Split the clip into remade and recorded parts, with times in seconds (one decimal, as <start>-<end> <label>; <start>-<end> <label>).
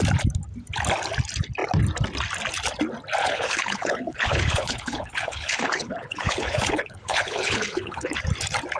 0.0-3.2 recorded; 3.2-8.2 remade; 8.2-8.8 recorded